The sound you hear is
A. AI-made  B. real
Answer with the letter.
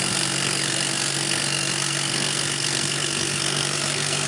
A